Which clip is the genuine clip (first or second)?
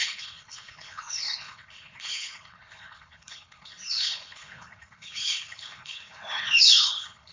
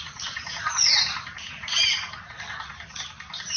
second